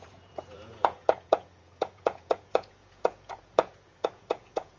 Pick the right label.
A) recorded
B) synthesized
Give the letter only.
B